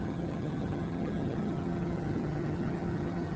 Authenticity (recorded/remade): remade